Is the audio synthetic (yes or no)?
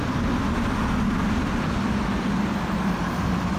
no